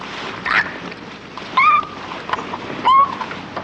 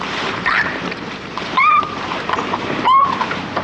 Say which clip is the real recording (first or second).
first